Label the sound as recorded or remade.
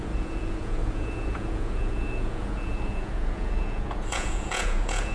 remade